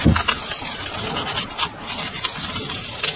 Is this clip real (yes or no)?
yes